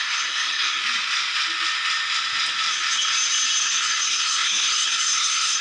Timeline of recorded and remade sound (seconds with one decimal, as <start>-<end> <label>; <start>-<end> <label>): 0.0-0.8 remade; 0.8-3.6 recorded; 3.6-5.6 remade